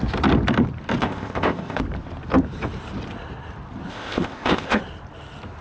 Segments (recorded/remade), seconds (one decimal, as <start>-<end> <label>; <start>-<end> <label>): 0.0-1.0 recorded; 1.0-1.8 remade; 1.8-3.9 recorded; 3.9-4.8 remade; 4.8-5.6 recorded

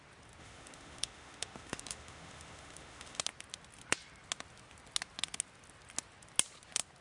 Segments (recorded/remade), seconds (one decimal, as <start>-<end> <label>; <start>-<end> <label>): 0.0-0.4 recorded; 0.4-3.2 remade; 3.2-7.0 recorded

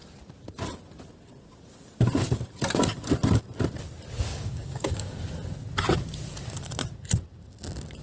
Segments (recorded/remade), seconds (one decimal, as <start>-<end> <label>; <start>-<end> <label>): 0.0-4.3 recorded; 4.3-5.2 remade; 5.2-8.0 recorded